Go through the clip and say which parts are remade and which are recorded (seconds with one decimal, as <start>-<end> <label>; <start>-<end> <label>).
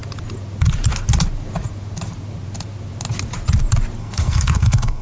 0.0-4.0 recorded; 4.0-5.0 remade